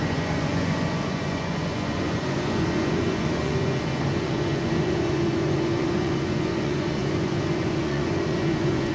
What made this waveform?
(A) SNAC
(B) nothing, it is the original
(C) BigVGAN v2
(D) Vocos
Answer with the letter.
D